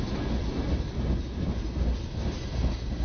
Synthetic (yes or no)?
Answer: no